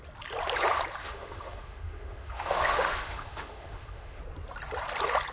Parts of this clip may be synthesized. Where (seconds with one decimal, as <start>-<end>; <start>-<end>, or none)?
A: 1.0-4.2